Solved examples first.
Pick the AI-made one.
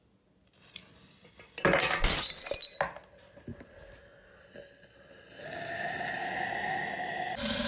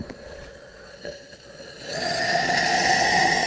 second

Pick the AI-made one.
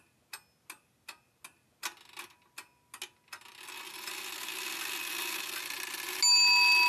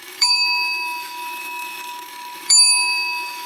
second